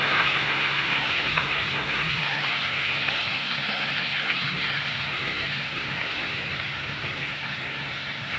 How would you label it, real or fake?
fake